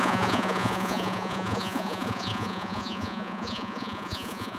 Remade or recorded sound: remade